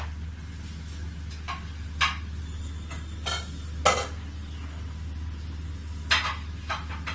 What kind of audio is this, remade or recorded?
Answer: recorded